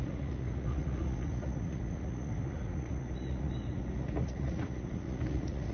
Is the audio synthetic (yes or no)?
yes